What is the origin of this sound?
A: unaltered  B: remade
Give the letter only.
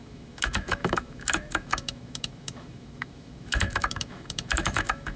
B